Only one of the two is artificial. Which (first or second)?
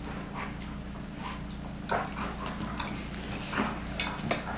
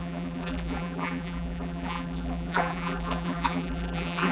second